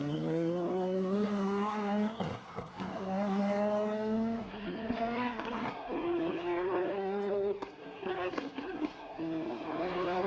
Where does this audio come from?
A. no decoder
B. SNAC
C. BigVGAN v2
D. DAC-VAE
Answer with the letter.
B